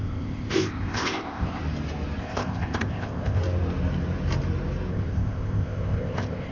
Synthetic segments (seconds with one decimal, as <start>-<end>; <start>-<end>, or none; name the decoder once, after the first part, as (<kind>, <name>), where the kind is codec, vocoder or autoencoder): 0.0-1.6 (codec, ZipCodec); 2.2-3.4; 4.9-6.5